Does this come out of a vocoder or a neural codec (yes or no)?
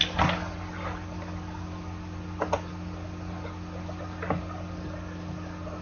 no